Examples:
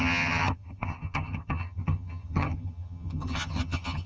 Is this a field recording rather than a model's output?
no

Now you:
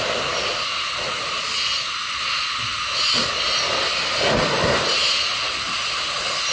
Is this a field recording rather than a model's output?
yes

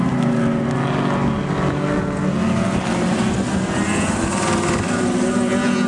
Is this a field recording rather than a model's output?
yes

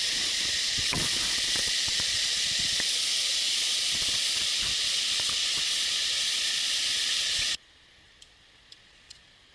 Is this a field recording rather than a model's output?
no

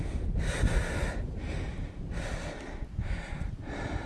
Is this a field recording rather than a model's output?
yes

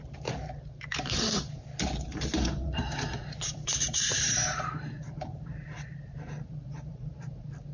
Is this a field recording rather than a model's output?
no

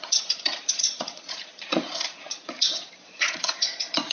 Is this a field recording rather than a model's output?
no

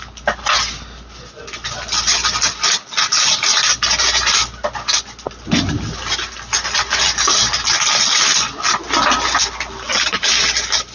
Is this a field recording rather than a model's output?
yes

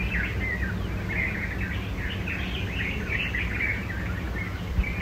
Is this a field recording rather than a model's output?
yes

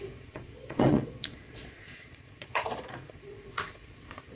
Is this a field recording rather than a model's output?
no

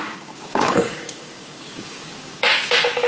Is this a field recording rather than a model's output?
no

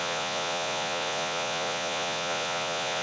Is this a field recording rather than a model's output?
no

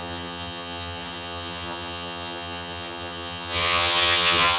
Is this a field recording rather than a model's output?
no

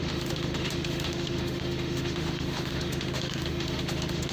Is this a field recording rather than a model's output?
no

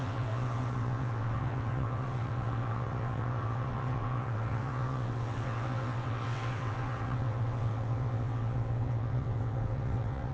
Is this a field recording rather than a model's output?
no